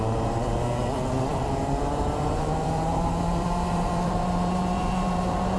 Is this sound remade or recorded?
remade